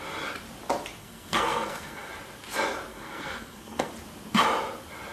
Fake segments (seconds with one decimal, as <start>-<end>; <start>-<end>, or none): 1.0-2.1; 2.9-3.9